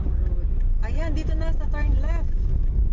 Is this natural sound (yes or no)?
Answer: yes